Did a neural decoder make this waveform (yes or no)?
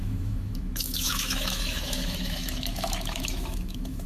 yes